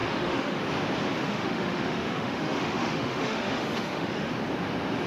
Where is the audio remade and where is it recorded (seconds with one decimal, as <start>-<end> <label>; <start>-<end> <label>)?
0.0-0.6 remade; 0.6-1.2 recorded; 1.2-4.3 remade; 4.3-5.1 recorded